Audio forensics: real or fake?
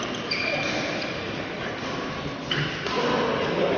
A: real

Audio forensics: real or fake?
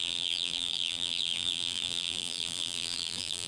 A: fake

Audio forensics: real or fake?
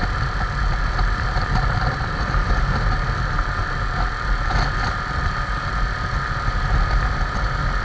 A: real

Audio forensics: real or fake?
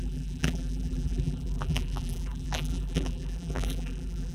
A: fake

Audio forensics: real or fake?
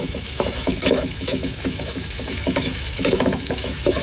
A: fake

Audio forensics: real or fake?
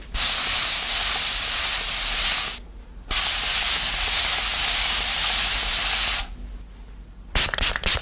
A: real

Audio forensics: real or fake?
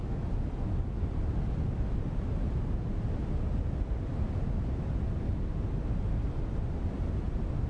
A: real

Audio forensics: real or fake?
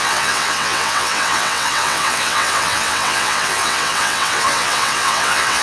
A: fake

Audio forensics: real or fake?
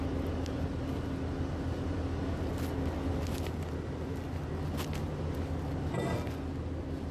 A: real